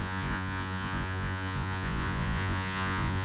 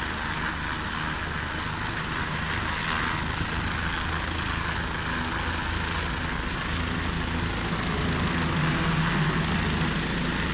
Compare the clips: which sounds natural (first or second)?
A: second